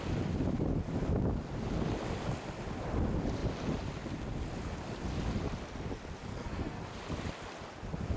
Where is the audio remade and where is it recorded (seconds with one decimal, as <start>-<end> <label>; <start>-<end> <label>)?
0.0-6.3 recorded; 6.3-6.8 remade; 6.8-8.2 recorded